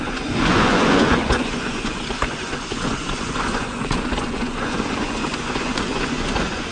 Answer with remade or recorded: remade